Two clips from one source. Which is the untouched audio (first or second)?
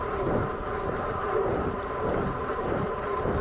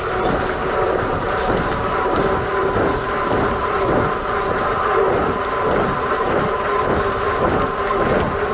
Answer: second